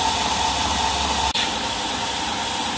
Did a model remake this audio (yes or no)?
no